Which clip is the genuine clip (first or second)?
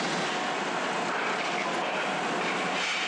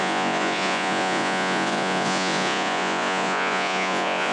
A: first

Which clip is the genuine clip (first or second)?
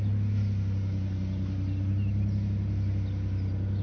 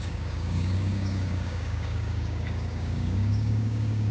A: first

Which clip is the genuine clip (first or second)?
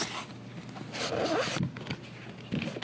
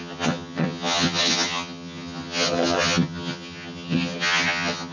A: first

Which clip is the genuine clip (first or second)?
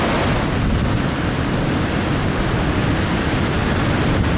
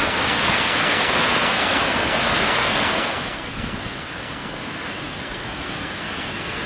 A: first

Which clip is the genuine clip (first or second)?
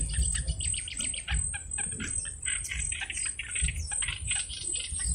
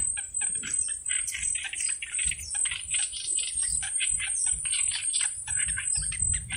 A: first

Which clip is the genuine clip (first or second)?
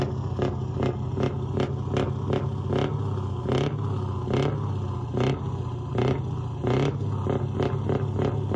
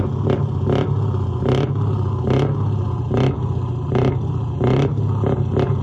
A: first